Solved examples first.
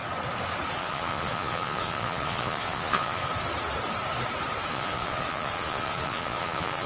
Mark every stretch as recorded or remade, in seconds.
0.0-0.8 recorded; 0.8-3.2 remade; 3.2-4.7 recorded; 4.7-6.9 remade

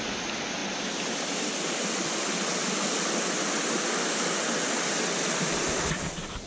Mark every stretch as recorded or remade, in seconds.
0.0-6.5 recorded

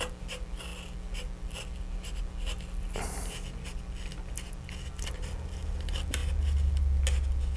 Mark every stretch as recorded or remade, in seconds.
0.0-7.6 recorded

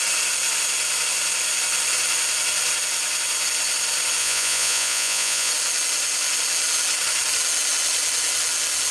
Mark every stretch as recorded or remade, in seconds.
0.0-4.2 recorded; 4.2-5.5 remade; 5.5-8.9 recorded

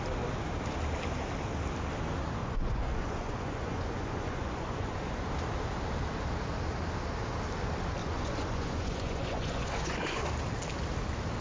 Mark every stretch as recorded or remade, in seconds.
0.0-2.4 recorded; 2.4-5.3 remade; 5.3-8.0 recorded; 8.0-10.2 remade; 10.2-11.4 recorded

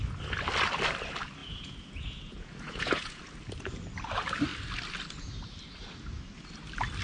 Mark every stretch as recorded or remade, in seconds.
0.0-1.4 recorded; 1.4-3.2 remade; 3.2-7.0 recorded

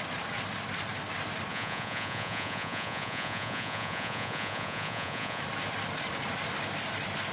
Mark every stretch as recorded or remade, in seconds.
0.0-1.5 recorded; 1.5-5.4 remade; 5.4-7.3 recorded